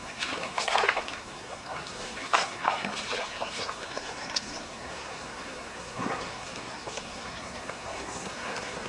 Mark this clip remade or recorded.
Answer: remade